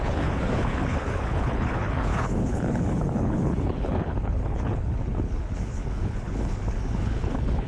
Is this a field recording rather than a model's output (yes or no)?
no